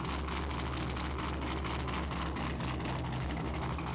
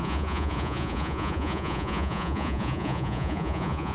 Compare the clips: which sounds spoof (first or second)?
second